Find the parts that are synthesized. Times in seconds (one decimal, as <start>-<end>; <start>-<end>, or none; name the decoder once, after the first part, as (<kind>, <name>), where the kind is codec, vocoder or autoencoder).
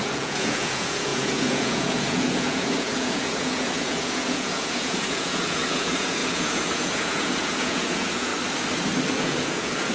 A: 0.0-8.3 (vocoder, Vocos); 9.2-9.9